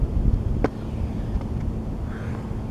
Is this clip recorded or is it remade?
recorded